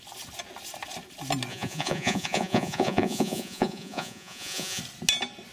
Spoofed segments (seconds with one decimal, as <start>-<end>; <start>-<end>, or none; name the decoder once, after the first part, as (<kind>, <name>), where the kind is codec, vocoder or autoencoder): 1.5-4.8 (vocoder, Vocos)